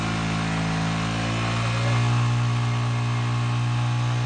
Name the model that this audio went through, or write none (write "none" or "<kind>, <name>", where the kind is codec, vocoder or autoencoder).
none